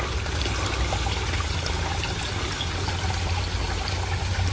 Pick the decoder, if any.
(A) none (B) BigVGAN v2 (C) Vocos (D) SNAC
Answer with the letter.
A